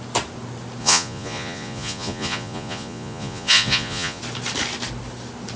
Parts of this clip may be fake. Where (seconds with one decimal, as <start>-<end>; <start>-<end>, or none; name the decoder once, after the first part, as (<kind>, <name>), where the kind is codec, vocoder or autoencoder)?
0.8-4.2 (vocoder, Vocos)